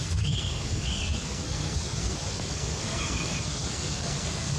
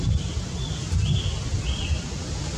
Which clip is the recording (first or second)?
second